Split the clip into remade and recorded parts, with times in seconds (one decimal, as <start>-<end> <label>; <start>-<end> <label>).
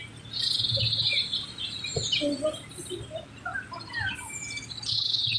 0.0-5.4 recorded